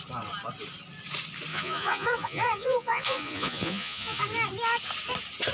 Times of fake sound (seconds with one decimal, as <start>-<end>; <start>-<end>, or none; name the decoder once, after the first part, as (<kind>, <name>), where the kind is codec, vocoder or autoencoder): 1.5-4.2 (vocoder, Vocos)